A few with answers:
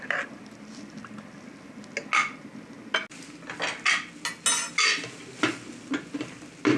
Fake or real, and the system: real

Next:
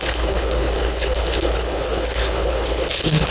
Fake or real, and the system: fake, codec, HILCodec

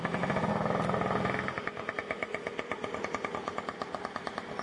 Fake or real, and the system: real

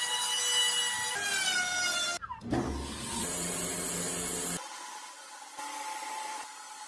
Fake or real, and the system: real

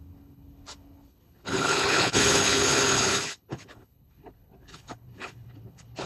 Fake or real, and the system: fake, codec, HILCodec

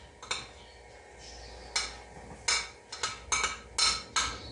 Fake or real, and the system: real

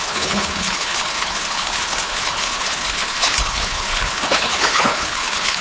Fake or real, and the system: fake, codec, HILCodec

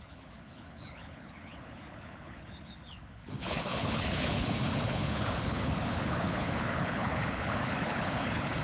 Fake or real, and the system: fake, codec, HILCodec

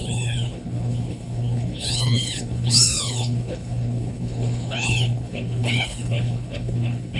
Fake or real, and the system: fake, codec, HILCodec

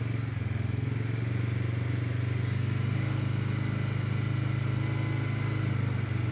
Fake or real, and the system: real